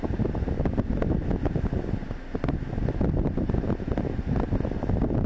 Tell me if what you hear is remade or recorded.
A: recorded